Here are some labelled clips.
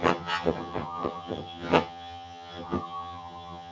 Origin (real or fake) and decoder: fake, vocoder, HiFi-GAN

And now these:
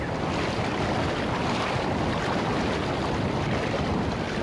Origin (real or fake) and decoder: real